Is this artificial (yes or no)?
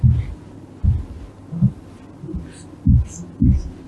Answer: no